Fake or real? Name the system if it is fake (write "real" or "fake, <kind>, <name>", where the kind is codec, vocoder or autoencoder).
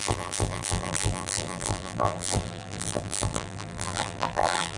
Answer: fake, vocoder, BigVGAN v2